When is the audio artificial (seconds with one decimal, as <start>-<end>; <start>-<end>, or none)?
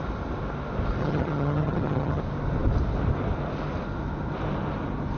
1.0-2.2